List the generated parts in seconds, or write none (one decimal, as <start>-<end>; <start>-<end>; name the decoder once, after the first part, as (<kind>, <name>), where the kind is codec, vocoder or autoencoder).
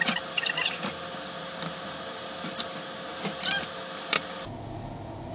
0.4-0.9 (vocoder, Vocos)